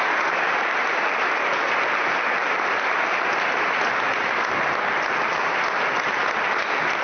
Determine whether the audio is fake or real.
real